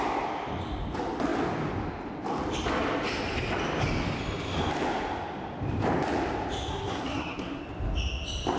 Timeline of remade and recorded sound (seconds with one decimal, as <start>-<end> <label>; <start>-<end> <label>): 0.0-6.7 recorded; 6.7-7.6 remade; 7.6-8.6 recorded